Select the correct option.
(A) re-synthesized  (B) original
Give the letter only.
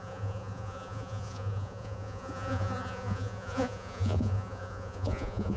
A